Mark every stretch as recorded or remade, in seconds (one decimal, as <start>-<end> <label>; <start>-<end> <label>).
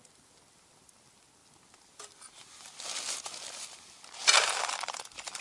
0.0-4.2 recorded; 4.2-5.4 remade